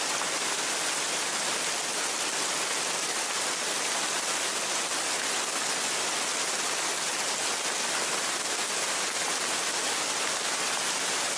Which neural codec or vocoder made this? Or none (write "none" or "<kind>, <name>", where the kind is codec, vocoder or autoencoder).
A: none